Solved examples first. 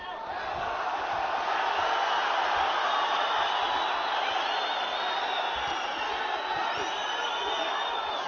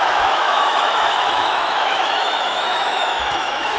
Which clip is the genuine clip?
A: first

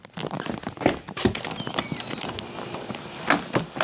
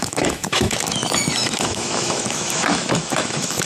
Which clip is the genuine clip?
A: first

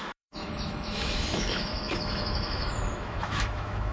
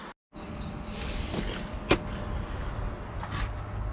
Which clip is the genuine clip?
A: second